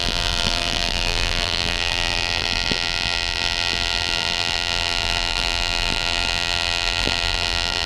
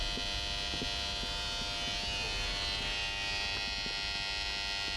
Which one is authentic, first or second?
second